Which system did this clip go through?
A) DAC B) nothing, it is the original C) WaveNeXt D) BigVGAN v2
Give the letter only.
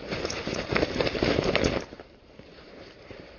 D